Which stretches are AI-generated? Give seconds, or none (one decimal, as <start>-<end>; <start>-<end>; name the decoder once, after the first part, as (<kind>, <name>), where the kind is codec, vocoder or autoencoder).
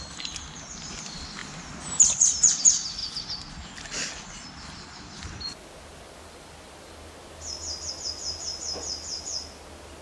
none